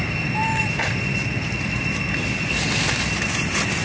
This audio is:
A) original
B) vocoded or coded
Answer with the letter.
A